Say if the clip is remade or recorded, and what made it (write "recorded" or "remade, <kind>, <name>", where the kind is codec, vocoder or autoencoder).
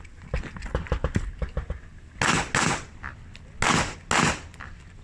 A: recorded